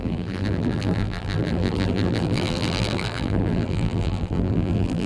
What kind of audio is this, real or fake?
fake